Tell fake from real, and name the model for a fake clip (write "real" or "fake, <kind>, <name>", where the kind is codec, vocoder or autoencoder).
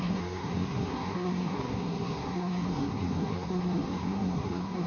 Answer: fake, codec, SNAC